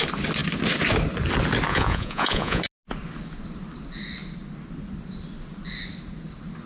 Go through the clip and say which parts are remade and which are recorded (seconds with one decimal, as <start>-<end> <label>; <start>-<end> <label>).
0.0-1.7 recorded; 1.7-2.6 remade; 2.6-6.7 recorded